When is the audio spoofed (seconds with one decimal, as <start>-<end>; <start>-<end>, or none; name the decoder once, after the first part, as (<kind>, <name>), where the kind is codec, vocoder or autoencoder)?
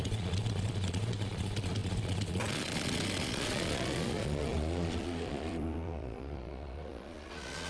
0.0-7.7 (vocoder, Vocos)